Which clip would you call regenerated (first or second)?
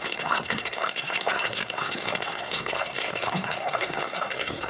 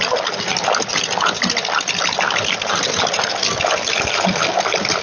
first